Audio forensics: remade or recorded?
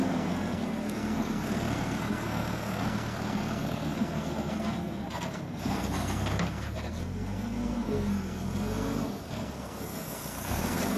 remade